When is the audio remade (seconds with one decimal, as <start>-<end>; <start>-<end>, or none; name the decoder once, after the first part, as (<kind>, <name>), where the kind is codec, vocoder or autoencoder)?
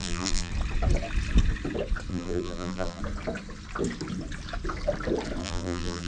0.0-0.5 (vocoder, BigVGAN v2); 2.1-3.0; 5.4-6.1